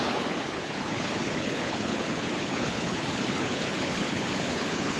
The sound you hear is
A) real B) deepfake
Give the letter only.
B